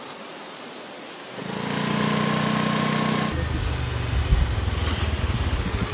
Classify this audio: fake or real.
real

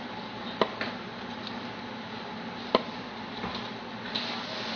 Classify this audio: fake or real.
real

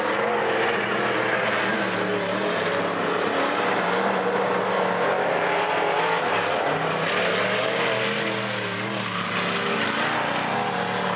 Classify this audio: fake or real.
real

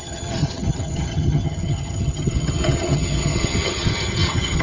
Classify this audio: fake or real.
fake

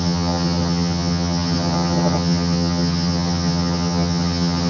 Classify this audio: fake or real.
fake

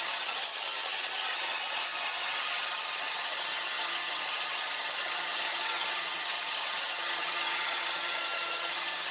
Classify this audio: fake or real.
fake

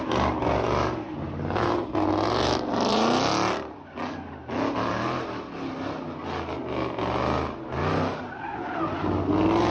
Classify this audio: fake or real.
real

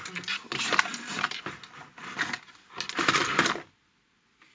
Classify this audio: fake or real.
real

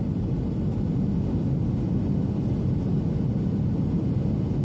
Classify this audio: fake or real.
real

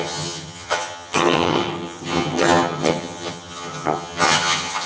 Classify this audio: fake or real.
fake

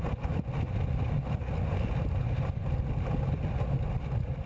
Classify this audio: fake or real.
real